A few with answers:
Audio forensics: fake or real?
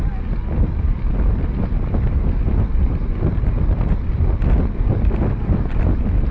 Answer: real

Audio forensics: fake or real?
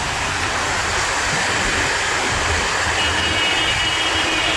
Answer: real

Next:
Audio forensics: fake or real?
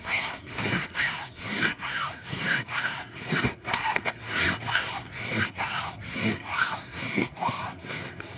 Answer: fake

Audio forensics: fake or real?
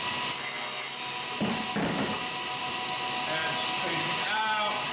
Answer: real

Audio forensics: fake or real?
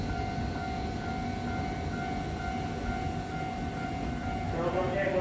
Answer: real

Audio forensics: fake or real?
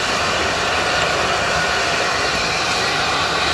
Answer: real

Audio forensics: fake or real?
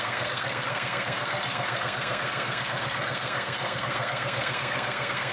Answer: fake